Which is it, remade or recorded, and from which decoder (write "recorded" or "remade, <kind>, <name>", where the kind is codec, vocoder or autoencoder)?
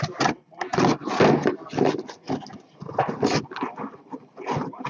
recorded